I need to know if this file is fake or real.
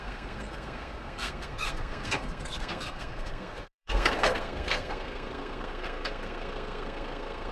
fake